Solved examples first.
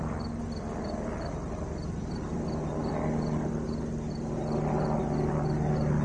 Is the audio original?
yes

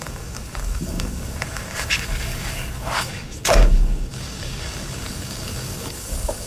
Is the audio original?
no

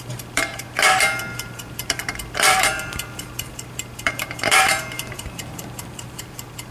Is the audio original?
no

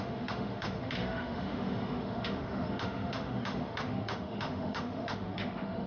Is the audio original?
no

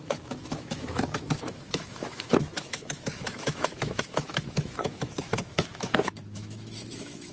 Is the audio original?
no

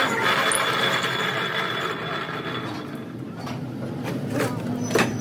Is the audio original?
yes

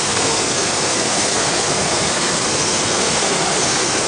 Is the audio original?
no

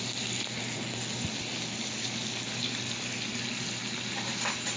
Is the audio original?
yes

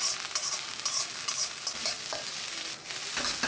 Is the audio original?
yes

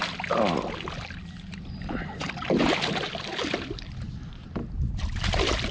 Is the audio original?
yes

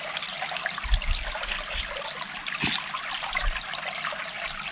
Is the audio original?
yes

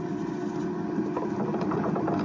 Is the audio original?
yes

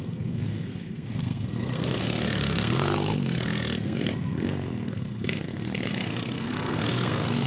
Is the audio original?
no